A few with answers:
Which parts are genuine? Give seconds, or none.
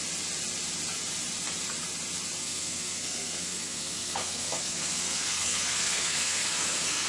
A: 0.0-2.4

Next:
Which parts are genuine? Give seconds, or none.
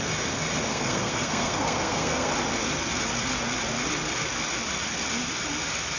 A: 0.0-0.7; 2.3-6.0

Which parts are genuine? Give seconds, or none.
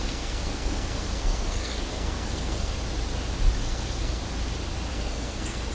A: 2.7-3.6; 4.2-4.9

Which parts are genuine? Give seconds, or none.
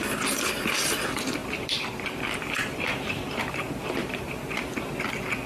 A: 0.0-1.4; 4.6-5.5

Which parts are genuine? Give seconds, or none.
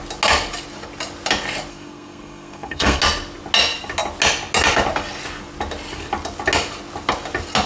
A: 0.0-1.7; 3.0-7.7